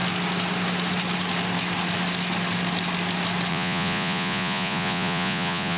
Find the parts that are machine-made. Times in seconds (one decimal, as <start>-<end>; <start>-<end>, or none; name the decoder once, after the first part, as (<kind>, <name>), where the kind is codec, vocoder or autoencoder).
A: 3.5-5.8 (vocoder, Vocos)

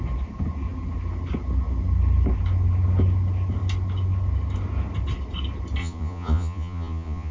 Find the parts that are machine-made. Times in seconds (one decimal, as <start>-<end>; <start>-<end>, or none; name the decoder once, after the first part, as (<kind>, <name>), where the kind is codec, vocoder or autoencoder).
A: 5.8-7.3 (vocoder, Vocos)